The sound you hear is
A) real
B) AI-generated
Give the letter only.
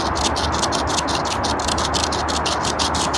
A